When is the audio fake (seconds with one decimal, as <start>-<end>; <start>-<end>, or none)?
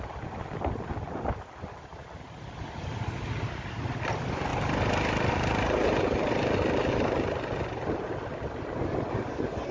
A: none